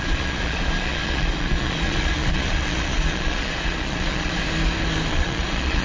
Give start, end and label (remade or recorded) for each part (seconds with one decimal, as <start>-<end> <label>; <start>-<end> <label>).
0.0-4.4 remade; 4.4-5.1 recorded; 5.1-5.8 remade